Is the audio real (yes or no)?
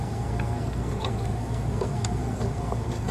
no